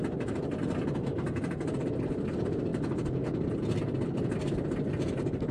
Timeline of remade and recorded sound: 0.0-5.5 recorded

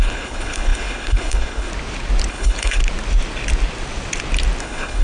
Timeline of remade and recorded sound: 0.0-1.7 remade; 1.7-2.3 recorded; 2.3-2.8 remade; 2.8-4.6 recorded; 4.6-5.0 remade

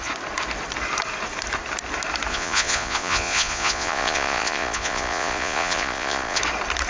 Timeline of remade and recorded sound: 0.0-2.3 recorded; 2.3-6.4 remade; 6.4-6.9 recorded

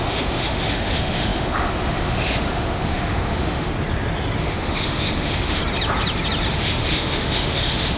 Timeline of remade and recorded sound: 0.0-3.7 remade; 3.7-4.4 recorded; 4.4-5.6 remade; 5.6-6.5 recorded; 6.5-8.0 remade

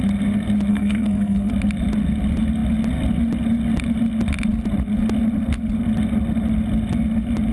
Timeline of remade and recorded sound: 0.0-0.7 recorded; 0.7-1.5 remade; 1.5-7.5 recorded

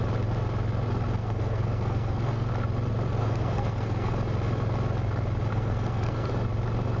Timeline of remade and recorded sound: 0.0-1.2 recorded; 1.2-2.5 remade; 2.5-3.2 recorded; 3.2-4.1 remade; 4.1-5.5 recorded; 5.5-6.3 remade; 6.3-7.0 recorded

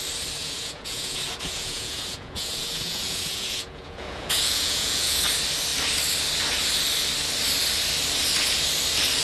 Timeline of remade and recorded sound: 0.0-0.4 recorded; 0.4-5.2 remade; 5.2-9.2 recorded